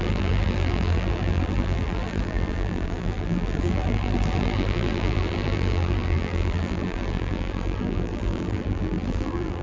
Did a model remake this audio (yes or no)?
yes